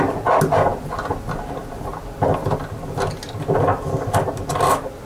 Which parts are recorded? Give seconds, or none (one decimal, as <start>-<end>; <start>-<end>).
0.0-5.1